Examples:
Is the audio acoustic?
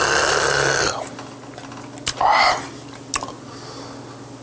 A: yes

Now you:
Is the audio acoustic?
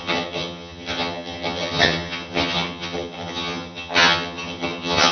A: no